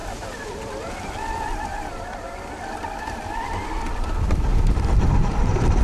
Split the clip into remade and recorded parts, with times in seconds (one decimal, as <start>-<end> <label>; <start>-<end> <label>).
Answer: 0.0-3.2 remade; 3.2-4.5 recorded; 4.5-5.2 remade; 5.2-5.8 recorded